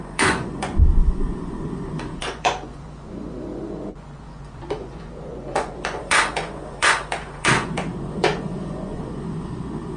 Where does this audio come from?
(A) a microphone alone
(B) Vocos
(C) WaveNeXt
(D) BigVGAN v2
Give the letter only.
B